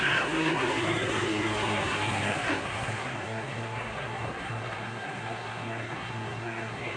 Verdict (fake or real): fake